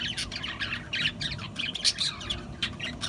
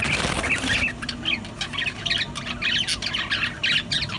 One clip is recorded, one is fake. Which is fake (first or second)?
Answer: first